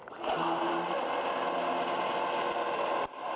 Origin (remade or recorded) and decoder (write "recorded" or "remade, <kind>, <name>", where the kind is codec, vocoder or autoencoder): recorded